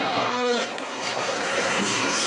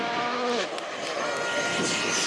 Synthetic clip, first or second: first